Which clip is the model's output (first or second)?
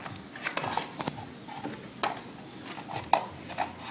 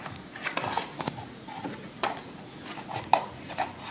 second